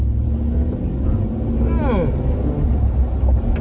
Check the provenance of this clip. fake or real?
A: real